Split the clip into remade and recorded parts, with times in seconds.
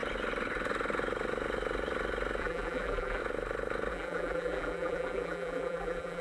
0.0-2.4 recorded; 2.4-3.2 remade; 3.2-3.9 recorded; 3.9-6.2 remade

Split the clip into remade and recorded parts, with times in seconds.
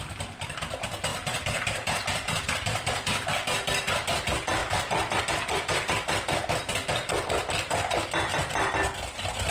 0.0-1.1 recorded; 1.1-2.5 remade; 2.5-4.6 recorded; 4.6-5.2 remade; 5.2-9.5 recorded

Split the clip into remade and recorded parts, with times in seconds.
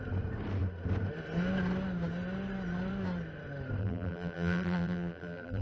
0.0-3.8 recorded; 3.8-5.6 remade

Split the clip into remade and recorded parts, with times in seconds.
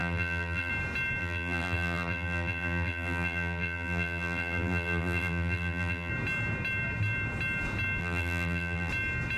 0.0-0.7 remade; 0.7-1.2 recorded; 1.2-6.1 remade; 6.1-8.0 recorded; 8.0-8.9 remade; 8.9-9.4 recorded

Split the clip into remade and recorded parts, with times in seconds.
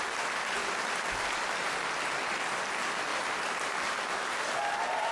0.0-0.6 recorded; 0.6-1.7 remade; 1.7-3.1 recorded; 3.1-3.8 remade; 3.8-5.1 recorded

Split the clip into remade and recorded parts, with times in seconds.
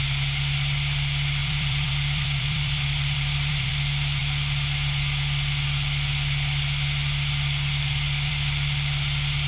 0.0-1.4 recorded; 1.4-3.7 remade; 3.7-9.5 recorded